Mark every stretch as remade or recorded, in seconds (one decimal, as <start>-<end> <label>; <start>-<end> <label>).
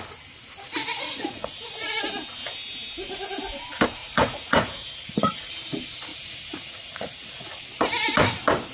0.0-0.8 recorded; 0.8-1.9 remade; 1.9-4.0 recorded; 4.0-5.5 remade; 5.5-6.1 recorded; 6.1-7.6 remade; 7.6-8.7 recorded